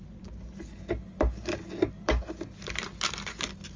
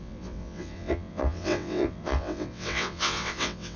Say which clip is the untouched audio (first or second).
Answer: first